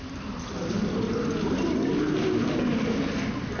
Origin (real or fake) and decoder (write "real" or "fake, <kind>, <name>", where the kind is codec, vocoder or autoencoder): real